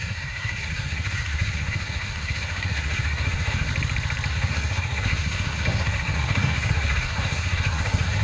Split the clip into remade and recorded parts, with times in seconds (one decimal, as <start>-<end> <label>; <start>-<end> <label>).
0.0-3.7 remade; 3.7-4.3 recorded; 4.3-8.2 remade